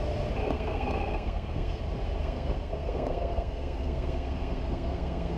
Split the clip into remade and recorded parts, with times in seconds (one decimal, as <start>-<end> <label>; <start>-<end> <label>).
0.0-0.4 recorded; 0.4-1.8 remade; 1.8-2.2 recorded; 2.2-5.4 remade